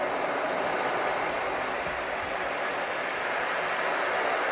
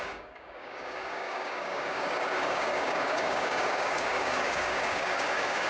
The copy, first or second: second